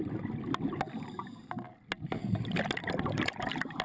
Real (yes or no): yes